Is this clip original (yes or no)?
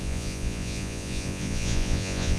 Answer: no